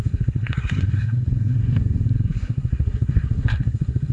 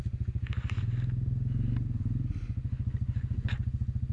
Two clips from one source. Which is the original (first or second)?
second